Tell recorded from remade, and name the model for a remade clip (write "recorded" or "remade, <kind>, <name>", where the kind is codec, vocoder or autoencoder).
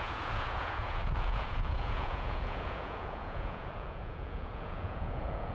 remade, vocoder, Vocos